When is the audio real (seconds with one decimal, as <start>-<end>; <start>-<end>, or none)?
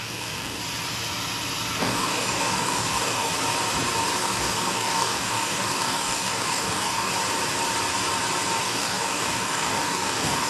0.6-1.8; 3.3-4.2; 7.1-8.6